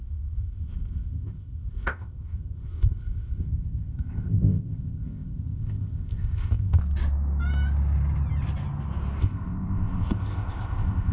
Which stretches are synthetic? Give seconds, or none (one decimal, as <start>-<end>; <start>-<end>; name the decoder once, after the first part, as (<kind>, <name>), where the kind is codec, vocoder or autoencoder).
0.0-6.8 (codec, ZipCodec); 9.2-11.1